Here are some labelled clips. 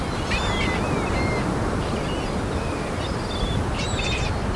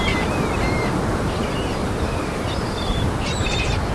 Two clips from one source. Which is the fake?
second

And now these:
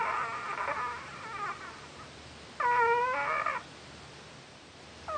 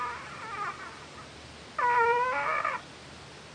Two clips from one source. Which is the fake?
second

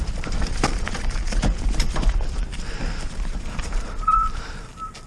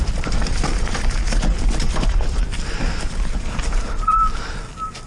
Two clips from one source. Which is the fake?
first